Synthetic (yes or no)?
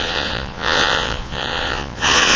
yes